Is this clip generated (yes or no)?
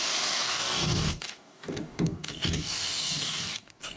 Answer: yes